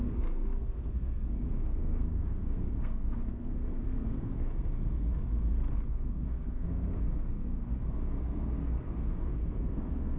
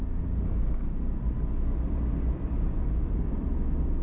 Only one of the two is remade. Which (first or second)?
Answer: first